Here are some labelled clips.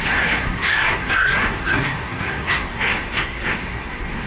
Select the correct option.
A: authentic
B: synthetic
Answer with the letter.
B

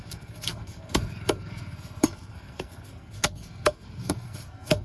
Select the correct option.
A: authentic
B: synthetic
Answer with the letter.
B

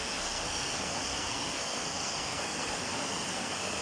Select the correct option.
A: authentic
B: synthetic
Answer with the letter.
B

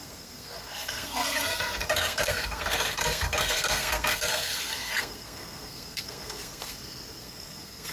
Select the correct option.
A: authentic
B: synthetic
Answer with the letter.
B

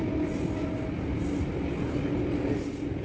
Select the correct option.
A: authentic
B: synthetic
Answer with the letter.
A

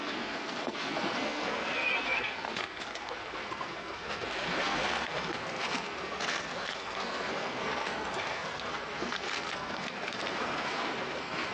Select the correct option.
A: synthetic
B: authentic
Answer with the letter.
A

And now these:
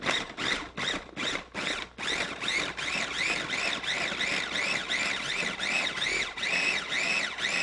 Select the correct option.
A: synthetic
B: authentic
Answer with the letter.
B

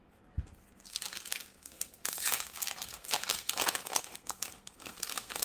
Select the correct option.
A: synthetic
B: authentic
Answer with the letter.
A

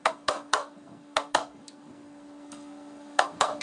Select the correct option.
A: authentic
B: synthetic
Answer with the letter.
B